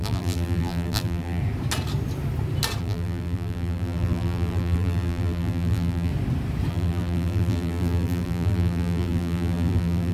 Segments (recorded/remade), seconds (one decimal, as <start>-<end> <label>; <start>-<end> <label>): 0.0-1.4 remade; 1.4-2.8 recorded; 2.8-6.1 remade; 6.1-6.7 recorded; 6.7-10.1 remade